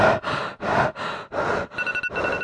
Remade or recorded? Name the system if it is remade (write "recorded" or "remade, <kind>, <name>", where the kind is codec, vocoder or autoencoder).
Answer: recorded